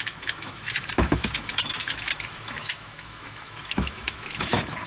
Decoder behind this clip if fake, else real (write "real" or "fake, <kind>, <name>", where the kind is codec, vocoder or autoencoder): fake, autoencoder, DAC-VAE